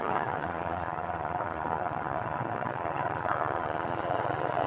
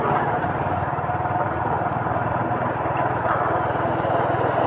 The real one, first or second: second